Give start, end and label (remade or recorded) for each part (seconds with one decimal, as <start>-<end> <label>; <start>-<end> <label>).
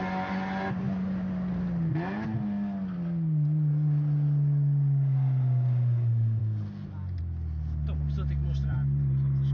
0.0-9.5 recorded